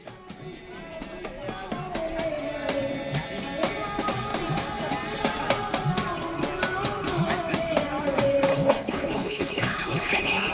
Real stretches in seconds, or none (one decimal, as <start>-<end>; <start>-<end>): 0.0-8.5